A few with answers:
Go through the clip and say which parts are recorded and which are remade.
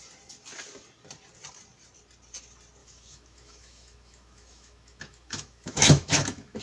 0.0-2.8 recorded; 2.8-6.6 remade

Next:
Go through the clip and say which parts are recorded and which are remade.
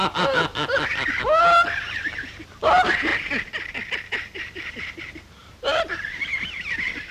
0.0-0.4 remade; 0.4-1.7 recorded; 1.7-3.1 remade; 3.1-3.9 recorded; 3.9-7.1 remade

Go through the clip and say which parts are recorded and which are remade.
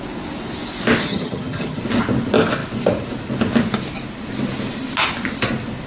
0.0-1.0 recorded; 1.0-1.8 remade; 1.8-5.9 recorded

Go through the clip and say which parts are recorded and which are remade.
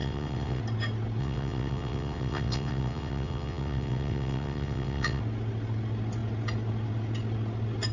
0.0-0.6 remade; 0.6-1.2 recorded; 1.2-5.2 remade; 5.2-7.9 recorded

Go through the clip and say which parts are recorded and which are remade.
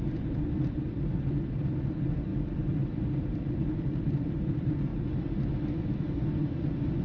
0.0-4.9 remade; 4.9-7.0 recorded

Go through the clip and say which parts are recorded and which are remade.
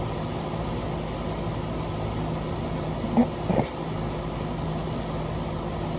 0.0-6.0 recorded